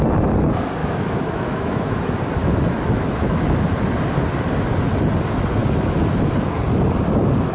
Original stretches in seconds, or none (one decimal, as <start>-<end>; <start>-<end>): 0.0-0.8; 1.9-2.4; 3.4-7.5